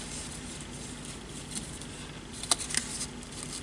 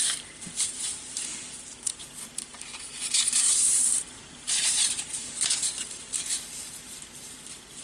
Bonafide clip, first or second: first